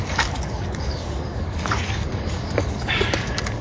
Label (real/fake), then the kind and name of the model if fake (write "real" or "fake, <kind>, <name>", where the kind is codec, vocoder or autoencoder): fake, codec, DAC